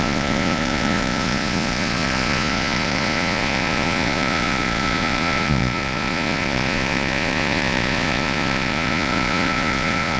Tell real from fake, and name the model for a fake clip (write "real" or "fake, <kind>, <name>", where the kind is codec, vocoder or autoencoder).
fake, vocoder, Vocos